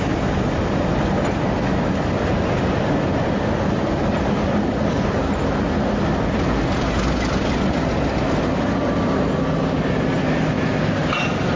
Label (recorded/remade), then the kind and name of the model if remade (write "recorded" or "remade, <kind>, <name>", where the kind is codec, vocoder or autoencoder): recorded